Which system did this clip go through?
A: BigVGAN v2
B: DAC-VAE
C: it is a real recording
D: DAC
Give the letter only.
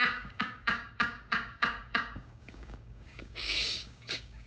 D